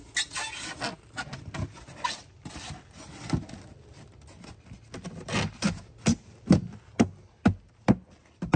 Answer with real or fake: real